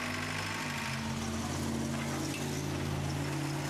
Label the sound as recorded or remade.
recorded